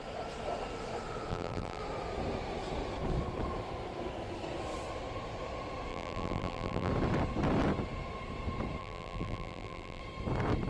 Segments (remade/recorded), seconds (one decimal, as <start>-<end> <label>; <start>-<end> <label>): 0.0-1.3 recorded; 1.3-1.8 remade; 1.8-5.9 recorded; 5.9-6.9 remade; 6.9-8.8 recorded; 8.8-10.0 remade; 10.0-10.7 recorded